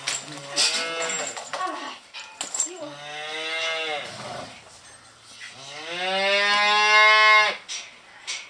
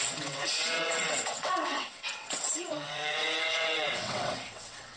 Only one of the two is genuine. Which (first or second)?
first